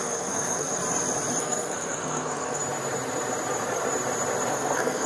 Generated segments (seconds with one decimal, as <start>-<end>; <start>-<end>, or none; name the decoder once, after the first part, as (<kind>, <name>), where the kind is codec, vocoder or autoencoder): 0.0-0.8 (codec, SNAC); 1.4-2.6; 4.5-5.1